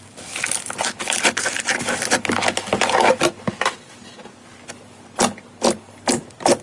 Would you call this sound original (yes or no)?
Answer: yes